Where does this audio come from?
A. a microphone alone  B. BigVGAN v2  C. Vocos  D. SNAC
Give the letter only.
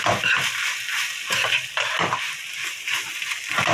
B